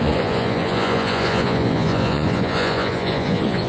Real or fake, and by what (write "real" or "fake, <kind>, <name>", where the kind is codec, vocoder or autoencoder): fake, vocoder, Vocos